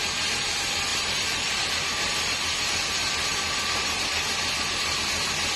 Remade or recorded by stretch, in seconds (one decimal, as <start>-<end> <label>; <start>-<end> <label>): 0.0-0.9 recorded; 0.9-1.7 remade; 1.7-5.6 recorded